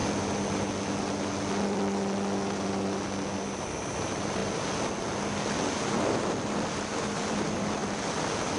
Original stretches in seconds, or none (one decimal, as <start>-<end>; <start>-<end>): 0.0-3.6; 4.4-5.7; 7.8-8.6